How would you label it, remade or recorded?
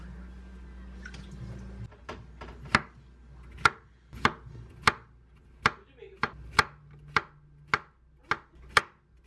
recorded